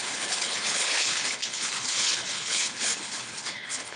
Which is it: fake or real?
fake